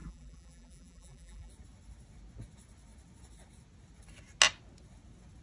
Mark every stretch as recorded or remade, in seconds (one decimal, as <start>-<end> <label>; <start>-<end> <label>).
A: 0.0-1.5 remade; 1.5-5.4 recorded